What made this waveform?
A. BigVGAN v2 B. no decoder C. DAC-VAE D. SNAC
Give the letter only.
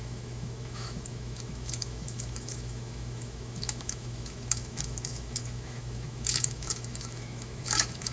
C